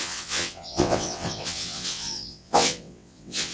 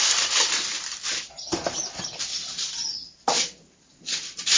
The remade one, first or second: first